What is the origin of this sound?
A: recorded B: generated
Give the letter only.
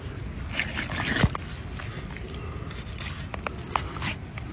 A